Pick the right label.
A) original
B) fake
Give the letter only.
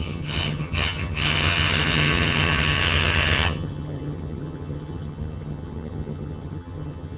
B